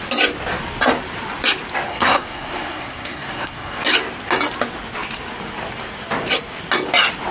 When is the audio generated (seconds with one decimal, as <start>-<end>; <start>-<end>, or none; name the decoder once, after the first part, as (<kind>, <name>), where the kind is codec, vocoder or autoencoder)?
1.9-3.8 (codec, SNAC)